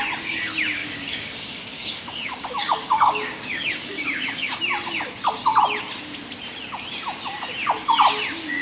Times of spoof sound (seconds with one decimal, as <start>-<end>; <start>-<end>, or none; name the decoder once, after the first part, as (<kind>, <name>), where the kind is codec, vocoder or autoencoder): 0.8-4.6 (codec, DAC)